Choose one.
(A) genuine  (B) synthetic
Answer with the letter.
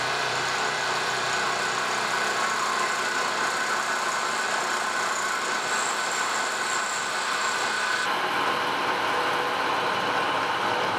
A